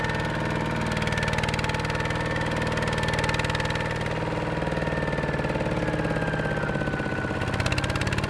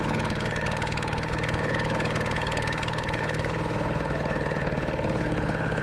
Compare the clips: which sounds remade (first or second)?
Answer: second